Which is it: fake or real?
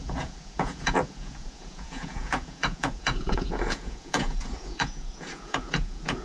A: fake